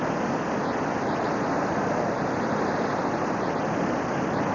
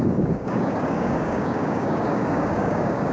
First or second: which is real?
first